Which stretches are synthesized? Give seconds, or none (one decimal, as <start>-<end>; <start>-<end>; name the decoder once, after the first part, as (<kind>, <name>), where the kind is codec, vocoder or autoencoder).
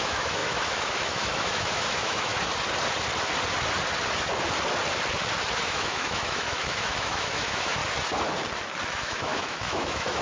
0.0-2.3 (autoencoder, DAC-VAE); 5.6-7.8; 8.9-10.2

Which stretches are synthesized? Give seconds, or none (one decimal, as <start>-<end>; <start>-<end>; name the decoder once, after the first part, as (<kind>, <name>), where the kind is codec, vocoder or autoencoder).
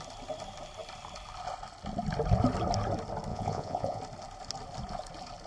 3.3-4.0 (vocoder, Vocos)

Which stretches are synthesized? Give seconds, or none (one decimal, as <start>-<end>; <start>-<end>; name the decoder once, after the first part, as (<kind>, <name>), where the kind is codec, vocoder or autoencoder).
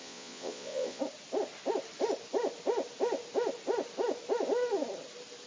0.0-1.0 (vocoder, Vocos)